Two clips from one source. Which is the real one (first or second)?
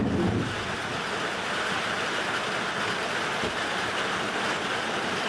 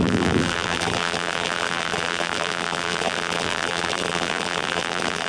first